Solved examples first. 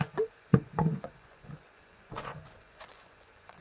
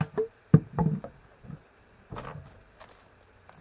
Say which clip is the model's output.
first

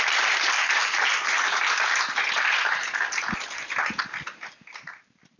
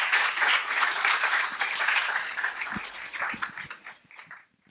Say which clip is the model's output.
second